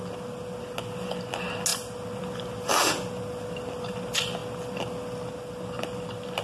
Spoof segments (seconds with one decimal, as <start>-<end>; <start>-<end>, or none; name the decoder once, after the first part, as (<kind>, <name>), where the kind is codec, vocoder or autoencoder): none